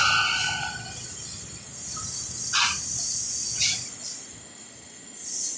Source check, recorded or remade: recorded